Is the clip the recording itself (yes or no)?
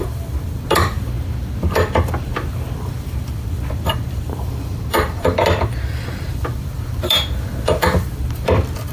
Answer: no